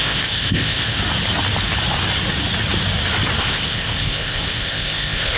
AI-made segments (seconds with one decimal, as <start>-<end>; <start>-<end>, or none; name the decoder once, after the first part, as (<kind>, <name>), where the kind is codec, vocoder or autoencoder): 0.0-1.0 (codec, ZipCodec); 3.4-5.4